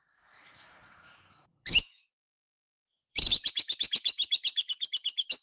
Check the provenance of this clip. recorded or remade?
remade